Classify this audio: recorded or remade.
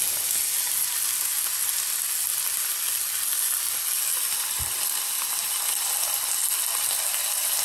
recorded